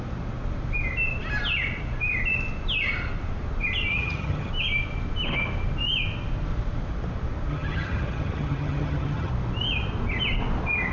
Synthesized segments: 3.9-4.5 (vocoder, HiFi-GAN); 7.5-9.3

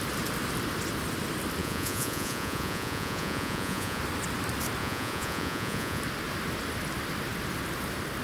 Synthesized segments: 1.6-4.0 (vocoder, Vocos); 4.8-6.0

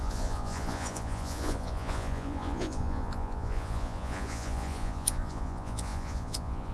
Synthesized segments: 0.0-6.7 (vocoder, Vocos)

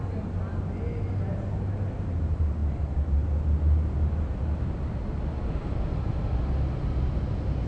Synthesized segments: none

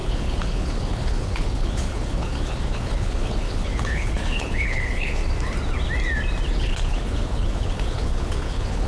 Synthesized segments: 0.0-5.2 (codec, HILCodec); 6.5-8.9

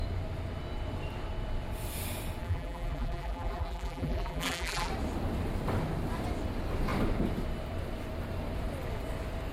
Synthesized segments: 2.4-4.9 (vocoder, BigVGAN v2)